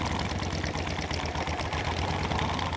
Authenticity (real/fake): real